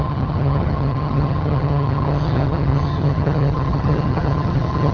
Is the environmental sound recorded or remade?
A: remade